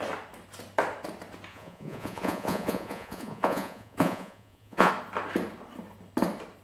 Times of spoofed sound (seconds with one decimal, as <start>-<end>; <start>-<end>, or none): 1.5-4.9